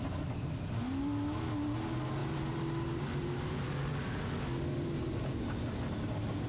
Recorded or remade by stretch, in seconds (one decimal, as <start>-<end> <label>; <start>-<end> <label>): 0.0-2.2 recorded; 2.2-5.4 remade; 5.4-6.5 recorded